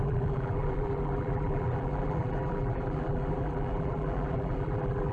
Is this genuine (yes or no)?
no